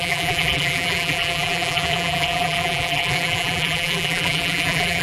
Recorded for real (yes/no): no